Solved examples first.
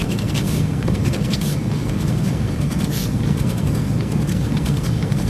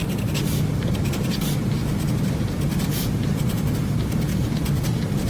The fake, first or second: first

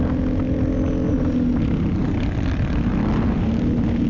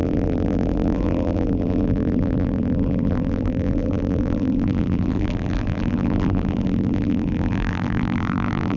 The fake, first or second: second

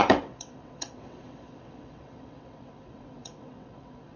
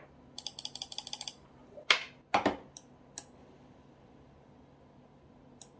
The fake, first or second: first